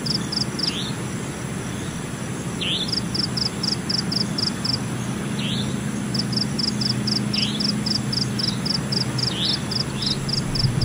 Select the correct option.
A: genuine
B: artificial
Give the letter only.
A